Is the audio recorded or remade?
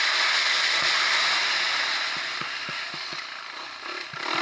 recorded